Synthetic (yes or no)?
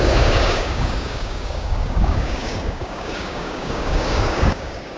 yes